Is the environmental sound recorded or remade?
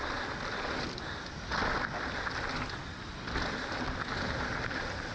recorded